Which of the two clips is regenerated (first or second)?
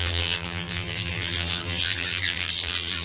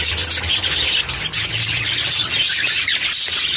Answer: first